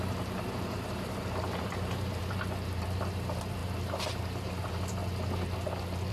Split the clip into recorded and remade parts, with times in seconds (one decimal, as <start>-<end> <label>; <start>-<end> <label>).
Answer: 0.0-5.0 remade; 5.0-6.1 recorded